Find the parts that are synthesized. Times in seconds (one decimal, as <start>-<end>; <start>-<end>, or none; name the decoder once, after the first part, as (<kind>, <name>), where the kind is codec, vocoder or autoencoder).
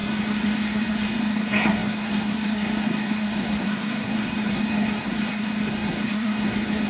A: 0.0-6.9 (codec, SNAC)